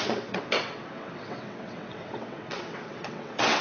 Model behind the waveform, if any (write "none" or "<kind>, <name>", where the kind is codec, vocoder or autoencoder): vocoder, WaveNeXt